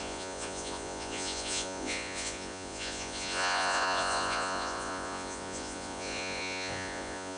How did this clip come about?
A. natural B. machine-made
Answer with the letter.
B